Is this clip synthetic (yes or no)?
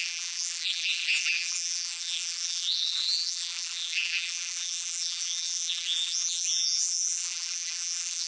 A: yes